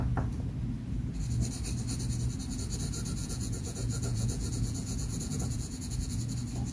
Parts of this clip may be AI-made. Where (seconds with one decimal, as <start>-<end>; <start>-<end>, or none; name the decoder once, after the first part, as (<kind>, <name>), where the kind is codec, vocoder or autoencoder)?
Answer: 3.2-6.2 (vocoder, Vocos)